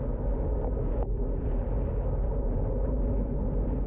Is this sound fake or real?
real